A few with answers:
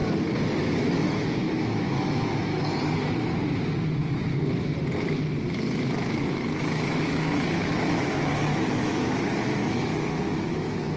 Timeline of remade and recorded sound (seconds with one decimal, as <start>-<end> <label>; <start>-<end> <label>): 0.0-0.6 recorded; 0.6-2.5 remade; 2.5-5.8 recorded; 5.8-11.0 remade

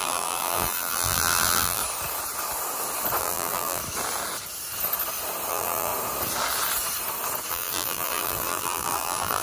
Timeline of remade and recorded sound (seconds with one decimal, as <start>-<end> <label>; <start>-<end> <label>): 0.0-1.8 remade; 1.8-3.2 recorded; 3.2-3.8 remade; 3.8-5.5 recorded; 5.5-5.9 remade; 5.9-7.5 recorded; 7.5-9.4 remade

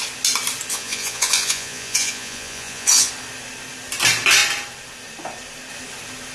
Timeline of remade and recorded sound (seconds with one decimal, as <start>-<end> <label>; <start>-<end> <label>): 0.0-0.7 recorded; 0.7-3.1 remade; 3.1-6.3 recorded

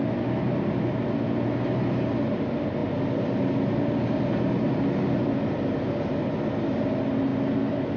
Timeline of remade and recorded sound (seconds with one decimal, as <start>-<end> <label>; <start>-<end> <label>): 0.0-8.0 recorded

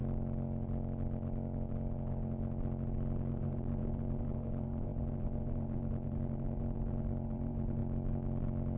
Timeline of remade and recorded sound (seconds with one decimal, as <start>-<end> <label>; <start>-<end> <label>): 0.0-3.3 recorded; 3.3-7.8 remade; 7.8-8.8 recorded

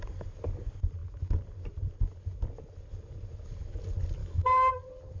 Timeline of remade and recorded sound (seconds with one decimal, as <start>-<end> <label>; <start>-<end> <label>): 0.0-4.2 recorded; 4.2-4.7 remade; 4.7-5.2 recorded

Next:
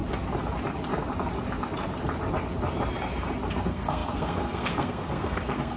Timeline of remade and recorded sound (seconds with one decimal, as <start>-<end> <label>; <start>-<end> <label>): 0.0-3.5 recorded; 3.5-5.8 remade